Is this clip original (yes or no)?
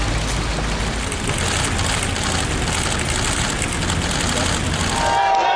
yes